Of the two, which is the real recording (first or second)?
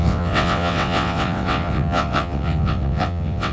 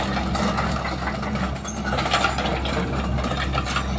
second